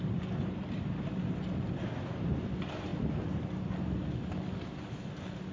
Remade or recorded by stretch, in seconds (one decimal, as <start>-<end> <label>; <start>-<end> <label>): 0.0-5.5 recorded